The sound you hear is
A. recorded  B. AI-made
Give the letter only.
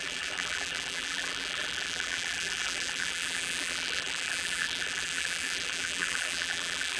B